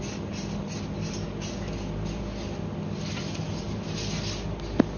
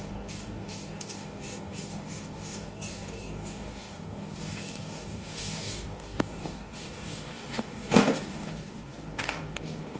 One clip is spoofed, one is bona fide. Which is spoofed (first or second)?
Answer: second